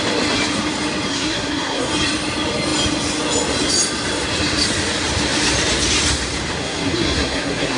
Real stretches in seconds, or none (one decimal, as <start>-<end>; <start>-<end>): 0.0-1.1; 1.9-6.6